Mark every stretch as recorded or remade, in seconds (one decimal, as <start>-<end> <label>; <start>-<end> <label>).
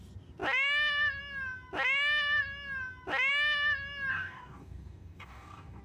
0.0-4.1 recorded; 4.1-5.8 remade